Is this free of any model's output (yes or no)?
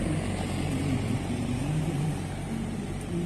yes